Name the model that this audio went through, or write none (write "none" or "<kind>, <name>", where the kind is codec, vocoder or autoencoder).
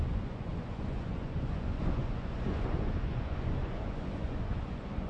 vocoder, Vocos